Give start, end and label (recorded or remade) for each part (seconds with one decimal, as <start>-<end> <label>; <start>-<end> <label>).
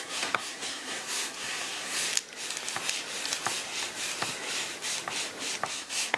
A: 0.0-2.0 remade; 2.0-5.7 recorded; 5.7-6.2 remade